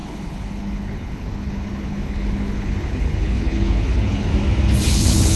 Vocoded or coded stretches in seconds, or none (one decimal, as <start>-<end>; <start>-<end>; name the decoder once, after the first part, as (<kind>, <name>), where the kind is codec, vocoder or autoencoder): 0.0-4.3 (codec, HILCodec); 4.9-5.4